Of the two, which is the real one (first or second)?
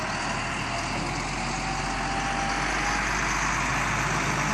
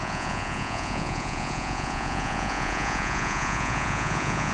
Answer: first